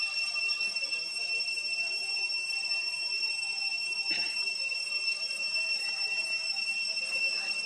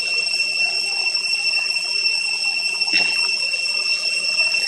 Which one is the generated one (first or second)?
second